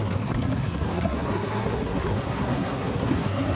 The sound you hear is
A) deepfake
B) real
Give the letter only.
A